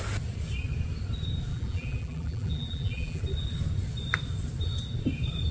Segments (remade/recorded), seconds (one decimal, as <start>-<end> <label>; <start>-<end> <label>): 0.0-1.5 recorded; 1.5-3.2 remade; 3.2-5.5 recorded